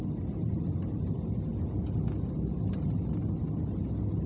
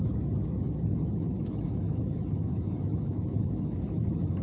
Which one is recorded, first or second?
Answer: first